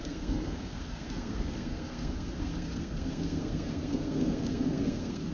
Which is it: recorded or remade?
remade